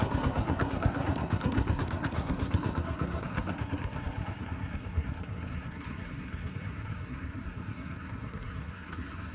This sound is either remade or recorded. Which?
remade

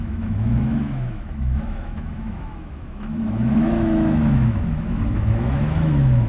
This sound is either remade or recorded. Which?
remade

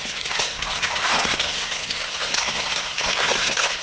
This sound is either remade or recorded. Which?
remade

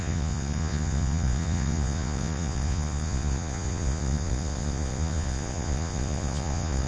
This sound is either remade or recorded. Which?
remade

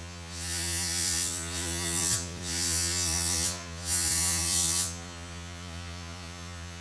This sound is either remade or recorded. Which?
remade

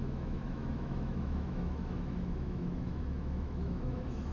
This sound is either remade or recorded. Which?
remade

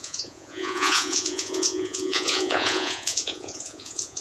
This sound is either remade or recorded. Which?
remade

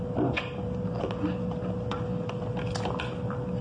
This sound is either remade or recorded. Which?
recorded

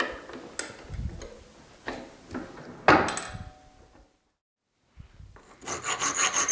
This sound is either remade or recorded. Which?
recorded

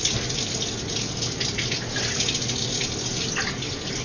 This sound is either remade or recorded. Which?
recorded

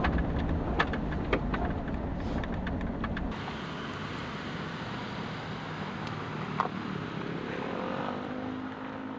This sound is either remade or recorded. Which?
recorded